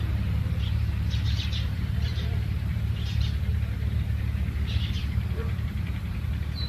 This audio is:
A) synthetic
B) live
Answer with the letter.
A